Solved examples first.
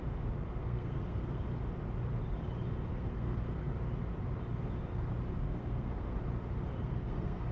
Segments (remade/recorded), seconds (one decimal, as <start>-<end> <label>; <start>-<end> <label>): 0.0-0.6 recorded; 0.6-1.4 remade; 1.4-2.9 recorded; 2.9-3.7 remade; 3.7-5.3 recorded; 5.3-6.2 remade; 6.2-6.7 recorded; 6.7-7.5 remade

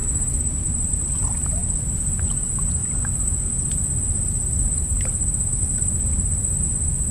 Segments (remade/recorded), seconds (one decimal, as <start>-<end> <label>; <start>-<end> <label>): 0.0-0.7 remade; 0.7-7.1 recorded

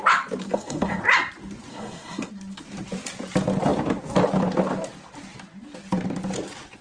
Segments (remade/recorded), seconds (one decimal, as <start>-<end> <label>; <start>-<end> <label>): 0.0-0.4 recorded; 0.4-1.0 remade; 1.0-1.7 recorded; 1.7-2.3 remade; 2.3-6.8 recorded

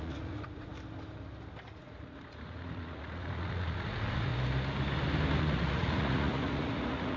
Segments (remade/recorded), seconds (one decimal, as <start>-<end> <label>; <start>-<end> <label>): 0.0-0.7 remade; 0.7-1.8 recorded; 1.8-4.3 remade; 4.3-5.4 recorded; 5.4-7.2 remade

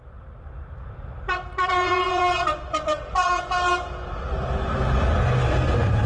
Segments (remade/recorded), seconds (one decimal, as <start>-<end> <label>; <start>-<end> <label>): 0.0-1.6 recorded; 1.6-3.4 remade; 3.4-6.1 recorded

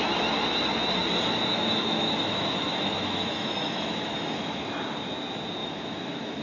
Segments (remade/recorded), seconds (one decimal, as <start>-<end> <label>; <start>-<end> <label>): 0.0-1.5 recorded; 1.5-4.7 remade; 4.7-5.6 recorded; 5.6-6.4 remade

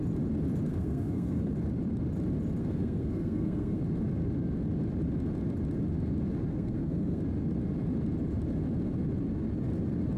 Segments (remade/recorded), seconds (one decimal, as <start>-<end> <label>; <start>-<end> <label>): 0.0-0.7 recorded; 0.7-1.5 remade; 1.5-2.6 recorded; 2.6-3.8 remade; 3.8-6.5 recorded; 6.5-7.2 remade; 7.2-10.2 recorded